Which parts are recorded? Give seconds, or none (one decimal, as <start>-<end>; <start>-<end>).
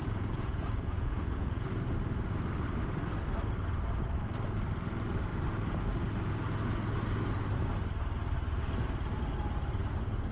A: 1.7-10.3